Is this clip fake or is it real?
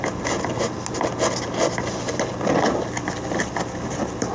real